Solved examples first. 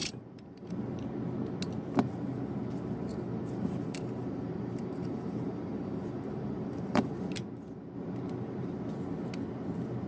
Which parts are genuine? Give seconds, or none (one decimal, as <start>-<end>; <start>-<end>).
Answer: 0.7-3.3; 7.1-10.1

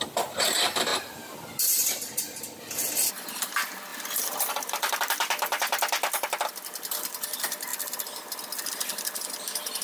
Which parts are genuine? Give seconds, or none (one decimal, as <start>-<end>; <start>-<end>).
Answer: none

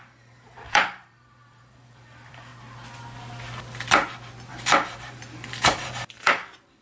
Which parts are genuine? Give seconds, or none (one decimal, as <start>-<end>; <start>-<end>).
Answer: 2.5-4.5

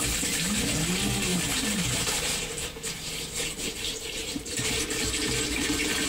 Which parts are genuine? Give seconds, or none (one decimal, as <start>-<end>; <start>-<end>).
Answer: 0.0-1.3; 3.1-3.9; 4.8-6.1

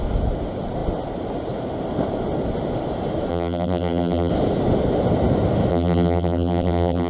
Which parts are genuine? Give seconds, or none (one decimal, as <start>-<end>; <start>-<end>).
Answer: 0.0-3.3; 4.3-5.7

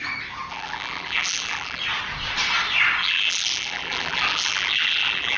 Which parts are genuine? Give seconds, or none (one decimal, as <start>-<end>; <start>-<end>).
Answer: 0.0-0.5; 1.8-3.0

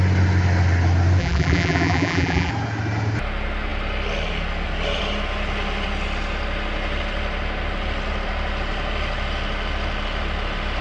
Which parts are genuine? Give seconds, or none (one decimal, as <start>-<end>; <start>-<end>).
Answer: 0.0-1.2; 2.5-10.8